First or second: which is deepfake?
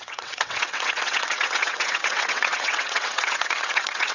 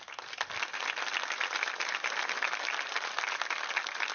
first